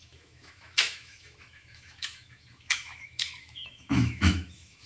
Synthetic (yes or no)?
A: yes